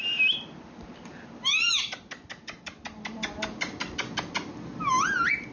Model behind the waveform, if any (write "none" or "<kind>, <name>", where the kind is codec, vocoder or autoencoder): none